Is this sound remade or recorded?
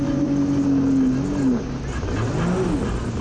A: recorded